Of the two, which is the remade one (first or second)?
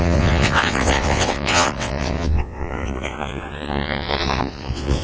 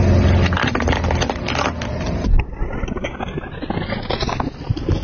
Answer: first